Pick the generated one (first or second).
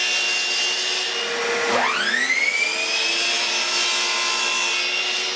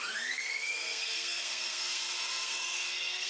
second